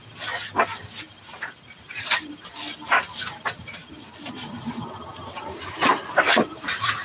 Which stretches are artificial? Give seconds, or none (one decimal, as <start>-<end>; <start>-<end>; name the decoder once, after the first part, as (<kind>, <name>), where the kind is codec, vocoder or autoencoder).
1.2-2.5 (vocoder, BigVGAN v2); 3.4-7.0